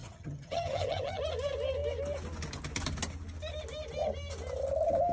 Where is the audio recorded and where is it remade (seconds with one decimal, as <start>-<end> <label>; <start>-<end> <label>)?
0.0-1.2 remade; 1.2-5.1 recorded

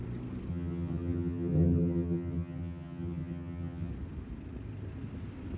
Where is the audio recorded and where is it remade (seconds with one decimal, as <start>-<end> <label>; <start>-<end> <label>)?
0.0-0.5 recorded; 0.5-3.9 remade; 3.9-5.6 recorded

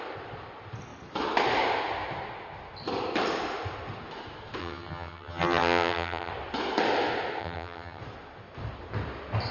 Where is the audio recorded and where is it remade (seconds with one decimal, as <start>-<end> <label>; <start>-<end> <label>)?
0.0-4.6 recorded; 4.6-6.3 remade; 6.3-7.4 recorded; 7.4-8.0 remade; 8.0-9.5 recorded